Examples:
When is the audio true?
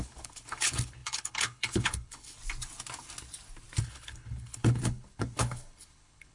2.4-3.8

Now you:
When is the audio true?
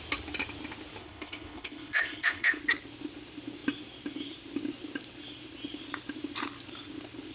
0.0-1.0; 2.6-7.3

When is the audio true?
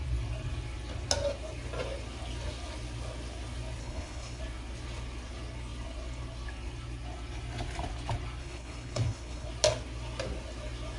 0.0-3.8; 4.4-8.4; 9.5-11.0